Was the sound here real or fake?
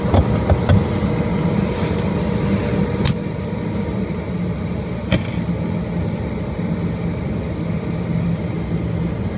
real